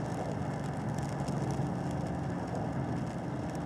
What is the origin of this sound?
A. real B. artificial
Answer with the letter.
A